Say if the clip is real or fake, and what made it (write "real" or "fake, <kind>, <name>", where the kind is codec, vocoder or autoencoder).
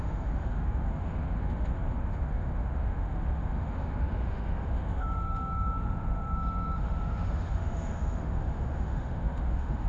fake, autoencoder, DAC-VAE